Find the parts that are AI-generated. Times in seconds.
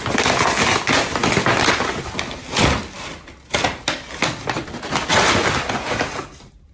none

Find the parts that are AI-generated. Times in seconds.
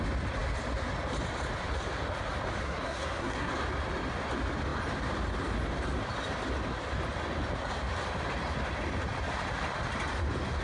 2.6-3.5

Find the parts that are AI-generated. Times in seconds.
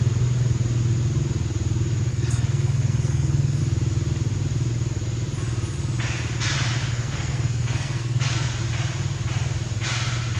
2.1-3.6; 6.8-8.5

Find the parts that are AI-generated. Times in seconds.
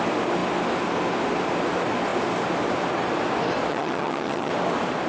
3.7-4.5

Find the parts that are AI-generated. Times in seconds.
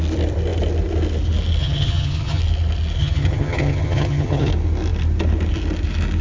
1.6-2.4; 3.0-4.5